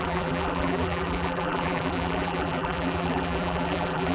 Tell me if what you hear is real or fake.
fake